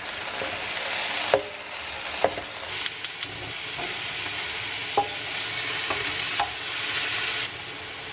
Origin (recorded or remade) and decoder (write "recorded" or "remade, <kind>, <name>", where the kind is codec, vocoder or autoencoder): recorded